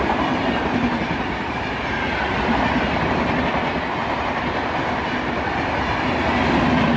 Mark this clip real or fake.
real